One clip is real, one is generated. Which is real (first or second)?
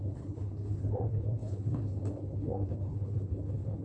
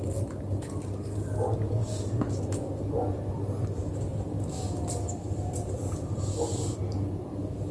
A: second